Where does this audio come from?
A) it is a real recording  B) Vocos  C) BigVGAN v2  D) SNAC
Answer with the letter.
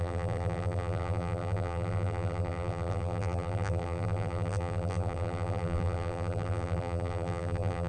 C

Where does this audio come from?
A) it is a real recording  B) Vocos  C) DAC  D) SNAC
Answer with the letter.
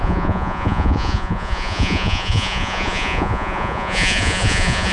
B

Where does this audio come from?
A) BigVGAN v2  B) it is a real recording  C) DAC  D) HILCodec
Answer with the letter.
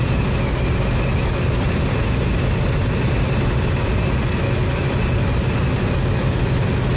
B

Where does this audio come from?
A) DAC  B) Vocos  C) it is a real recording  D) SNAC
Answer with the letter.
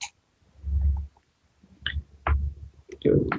C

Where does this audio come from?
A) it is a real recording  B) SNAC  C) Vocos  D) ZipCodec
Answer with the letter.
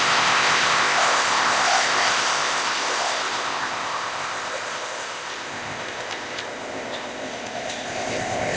D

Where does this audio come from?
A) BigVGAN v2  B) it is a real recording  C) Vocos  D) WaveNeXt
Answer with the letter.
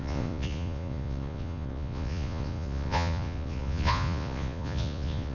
C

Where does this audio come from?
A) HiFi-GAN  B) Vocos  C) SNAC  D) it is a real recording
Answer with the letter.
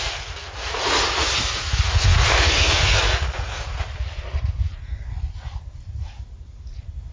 D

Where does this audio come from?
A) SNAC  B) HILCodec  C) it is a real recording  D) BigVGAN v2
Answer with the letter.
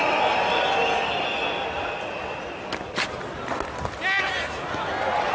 C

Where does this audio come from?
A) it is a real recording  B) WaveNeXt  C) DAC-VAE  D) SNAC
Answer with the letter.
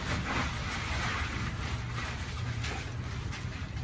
A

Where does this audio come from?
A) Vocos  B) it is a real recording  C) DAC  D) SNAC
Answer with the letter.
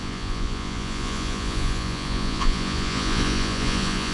A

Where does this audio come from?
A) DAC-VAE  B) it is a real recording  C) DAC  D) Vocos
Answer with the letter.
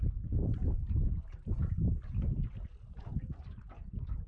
B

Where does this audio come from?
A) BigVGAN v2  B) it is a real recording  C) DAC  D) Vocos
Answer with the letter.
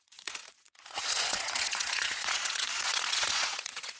D